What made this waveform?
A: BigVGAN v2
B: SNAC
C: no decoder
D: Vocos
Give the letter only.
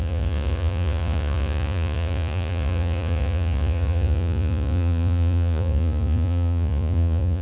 D